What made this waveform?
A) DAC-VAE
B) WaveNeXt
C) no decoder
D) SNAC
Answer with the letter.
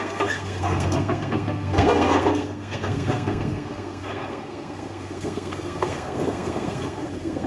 D